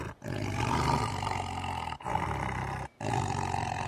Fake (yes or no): no